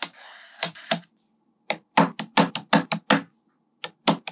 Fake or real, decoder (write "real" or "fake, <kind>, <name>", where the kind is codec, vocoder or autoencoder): real